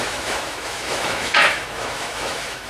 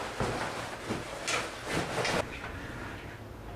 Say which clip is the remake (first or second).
first